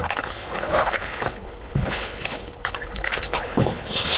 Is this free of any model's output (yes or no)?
no